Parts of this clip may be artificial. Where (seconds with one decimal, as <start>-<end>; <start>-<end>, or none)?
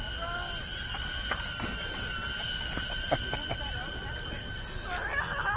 none